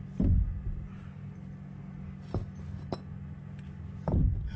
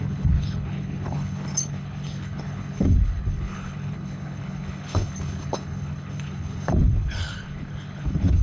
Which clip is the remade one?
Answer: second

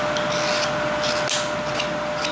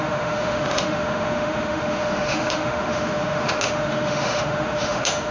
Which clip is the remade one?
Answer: second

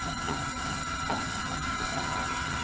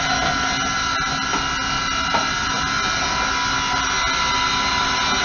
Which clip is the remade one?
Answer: first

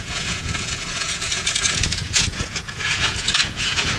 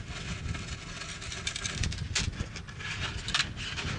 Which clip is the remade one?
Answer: first